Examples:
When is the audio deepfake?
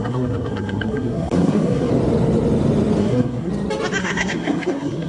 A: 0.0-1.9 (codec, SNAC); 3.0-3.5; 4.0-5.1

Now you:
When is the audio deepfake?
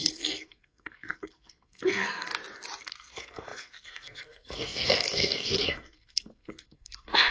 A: 0.0-2.3 (codec, SNAC); 2.8-7.3